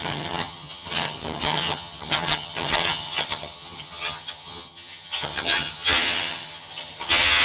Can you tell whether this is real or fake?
fake